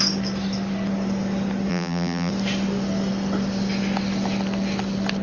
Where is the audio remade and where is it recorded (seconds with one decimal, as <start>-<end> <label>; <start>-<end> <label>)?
0.0-1.7 recorded; 1.7-2.3 remade; 2.3-5.2 recorded